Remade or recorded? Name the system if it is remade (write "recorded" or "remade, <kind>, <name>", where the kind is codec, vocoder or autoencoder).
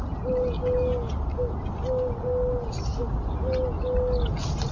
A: recorded